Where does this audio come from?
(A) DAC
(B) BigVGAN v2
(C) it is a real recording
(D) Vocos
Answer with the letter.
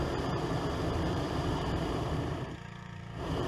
B